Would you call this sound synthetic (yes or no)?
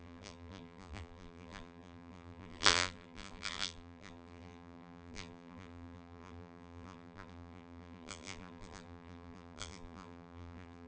yes